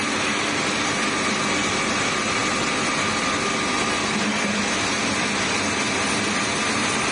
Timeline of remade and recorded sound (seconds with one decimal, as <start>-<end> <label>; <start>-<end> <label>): 0.0-7.1 recorded